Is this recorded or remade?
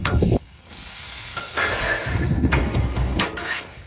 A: remade